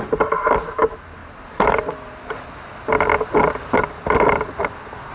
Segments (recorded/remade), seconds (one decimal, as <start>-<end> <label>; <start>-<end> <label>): 0.0-1.2 recorded; 1.2-1.8 remade; 1.8-5.1 recorded